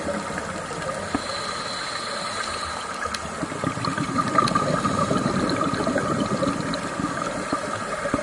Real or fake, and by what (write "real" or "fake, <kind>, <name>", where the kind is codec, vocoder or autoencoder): real